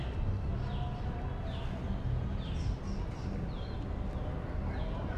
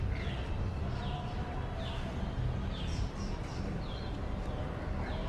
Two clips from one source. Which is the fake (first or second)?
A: second